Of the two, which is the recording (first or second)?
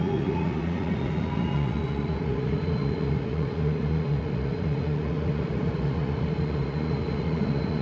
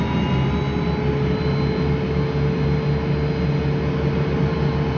second